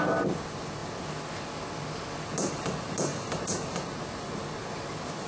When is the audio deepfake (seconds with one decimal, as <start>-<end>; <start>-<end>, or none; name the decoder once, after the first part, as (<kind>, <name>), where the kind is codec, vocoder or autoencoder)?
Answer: none